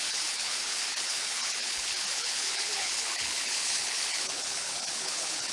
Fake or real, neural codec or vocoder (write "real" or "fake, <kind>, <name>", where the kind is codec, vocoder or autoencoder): fake, codec, HILCodec